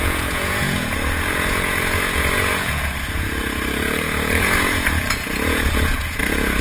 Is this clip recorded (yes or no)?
no